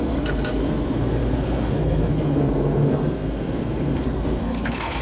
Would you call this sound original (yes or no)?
no